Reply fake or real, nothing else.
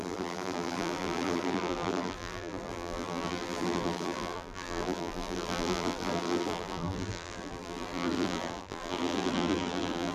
fake